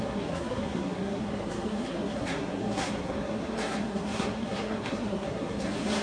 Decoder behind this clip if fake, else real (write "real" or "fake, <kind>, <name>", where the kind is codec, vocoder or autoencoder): fake, codec, SNAC